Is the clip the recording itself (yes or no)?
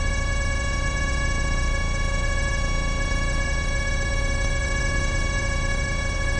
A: no